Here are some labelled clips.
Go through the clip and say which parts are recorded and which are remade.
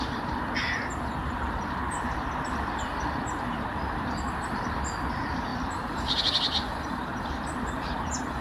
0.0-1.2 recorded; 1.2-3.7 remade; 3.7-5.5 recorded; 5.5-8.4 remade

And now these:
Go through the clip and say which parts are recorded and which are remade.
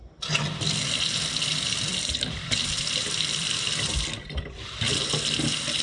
0.0-1.9 recorded; 1.9-3.9 remade; 3.9-5.8 recorded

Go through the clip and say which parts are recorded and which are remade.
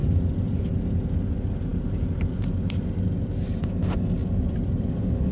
0.0-4.2 recorded; 4.2-4.7 remade; 4.7-5.3 recorded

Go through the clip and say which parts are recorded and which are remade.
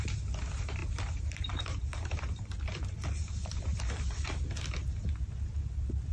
0.0-3.7 remade; 3.7-6.1 recorded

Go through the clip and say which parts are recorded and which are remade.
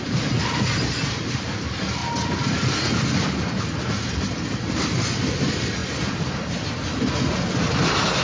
0.0-8.2 recorded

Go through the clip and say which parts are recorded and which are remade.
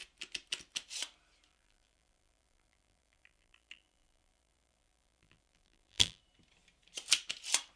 0.0-1.5 recorded; 1.5-6.2 remade; 6.2-7.8 recorded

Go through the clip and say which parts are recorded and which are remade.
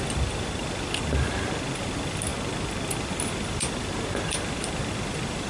0.0-5.5 recorded